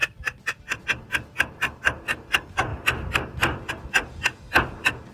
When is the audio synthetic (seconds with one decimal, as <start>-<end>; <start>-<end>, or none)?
0.0-0.8; 2.7-3.7